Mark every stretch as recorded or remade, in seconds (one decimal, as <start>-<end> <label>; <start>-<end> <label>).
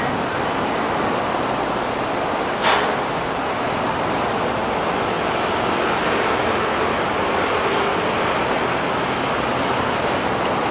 0.0-10.7 recorded